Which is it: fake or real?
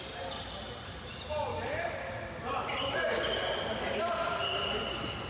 real